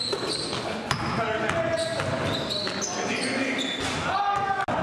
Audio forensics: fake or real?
real